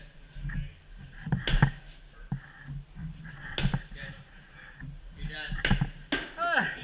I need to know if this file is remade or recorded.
recorded